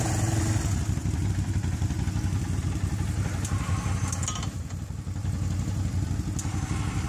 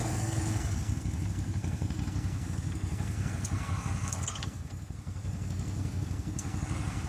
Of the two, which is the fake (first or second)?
second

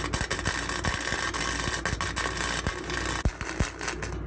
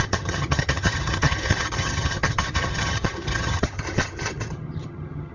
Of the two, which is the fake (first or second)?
second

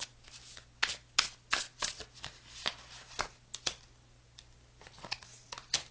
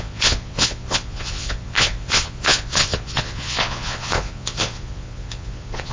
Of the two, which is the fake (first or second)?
second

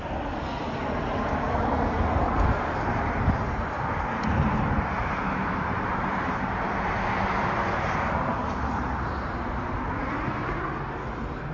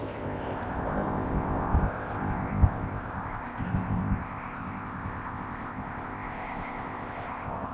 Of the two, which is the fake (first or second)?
second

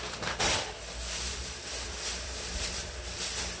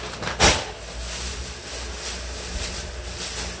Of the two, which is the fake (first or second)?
first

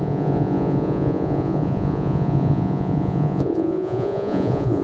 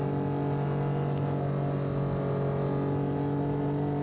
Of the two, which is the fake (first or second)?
first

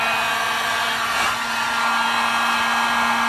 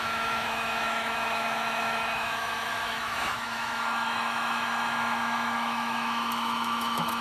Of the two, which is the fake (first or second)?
second